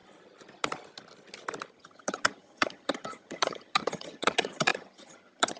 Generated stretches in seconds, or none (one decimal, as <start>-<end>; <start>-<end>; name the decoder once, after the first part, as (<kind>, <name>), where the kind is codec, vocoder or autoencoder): 1.7-5.6 (vocoder, HiFi-GAN)